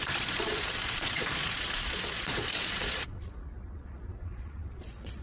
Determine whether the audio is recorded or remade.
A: remade